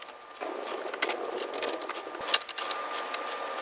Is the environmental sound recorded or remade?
recorded